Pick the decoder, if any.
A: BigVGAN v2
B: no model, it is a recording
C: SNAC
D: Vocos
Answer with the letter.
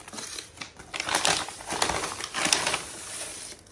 B